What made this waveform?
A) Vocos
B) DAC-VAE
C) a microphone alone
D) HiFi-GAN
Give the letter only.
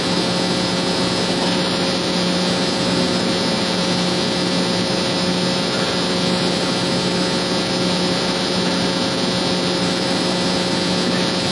C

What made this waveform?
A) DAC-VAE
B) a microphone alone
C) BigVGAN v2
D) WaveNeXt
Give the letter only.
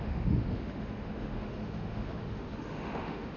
A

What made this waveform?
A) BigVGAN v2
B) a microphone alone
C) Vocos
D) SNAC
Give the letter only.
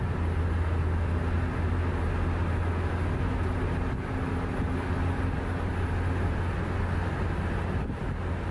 B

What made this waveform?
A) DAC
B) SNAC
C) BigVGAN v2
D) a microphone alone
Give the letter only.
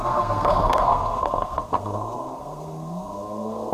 B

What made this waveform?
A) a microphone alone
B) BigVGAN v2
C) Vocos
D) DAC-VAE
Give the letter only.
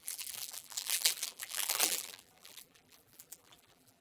B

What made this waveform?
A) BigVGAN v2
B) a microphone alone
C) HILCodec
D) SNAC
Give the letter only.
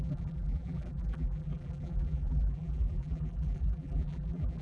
A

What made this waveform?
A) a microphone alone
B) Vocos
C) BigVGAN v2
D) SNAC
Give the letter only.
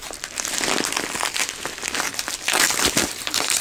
C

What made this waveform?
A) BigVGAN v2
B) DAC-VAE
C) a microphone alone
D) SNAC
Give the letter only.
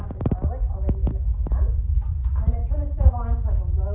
C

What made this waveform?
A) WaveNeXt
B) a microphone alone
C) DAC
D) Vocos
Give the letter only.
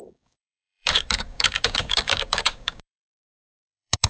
C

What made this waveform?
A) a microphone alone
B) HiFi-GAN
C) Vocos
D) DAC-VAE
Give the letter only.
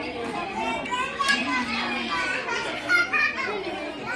A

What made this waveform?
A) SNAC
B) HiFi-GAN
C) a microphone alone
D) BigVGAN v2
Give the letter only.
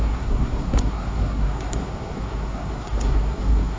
A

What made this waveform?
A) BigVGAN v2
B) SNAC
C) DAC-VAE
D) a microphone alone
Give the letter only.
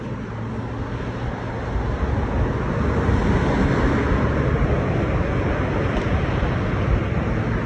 D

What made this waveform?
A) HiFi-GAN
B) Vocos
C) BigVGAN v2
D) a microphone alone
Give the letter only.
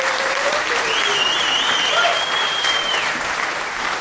C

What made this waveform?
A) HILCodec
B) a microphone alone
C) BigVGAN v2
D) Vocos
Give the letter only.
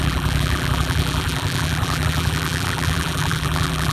C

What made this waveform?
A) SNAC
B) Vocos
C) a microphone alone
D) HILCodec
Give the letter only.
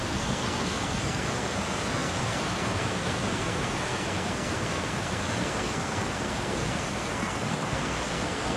A